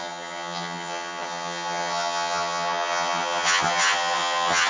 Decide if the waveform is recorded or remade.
remade